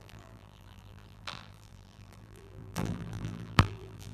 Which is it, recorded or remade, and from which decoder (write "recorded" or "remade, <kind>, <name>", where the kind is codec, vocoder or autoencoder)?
remade, vocoder, BigVGAN v2